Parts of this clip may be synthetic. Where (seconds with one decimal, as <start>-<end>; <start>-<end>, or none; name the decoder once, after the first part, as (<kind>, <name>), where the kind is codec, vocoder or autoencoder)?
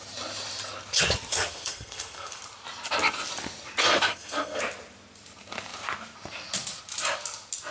1.3-2.4 (codec, SNAC); 3.8-4.6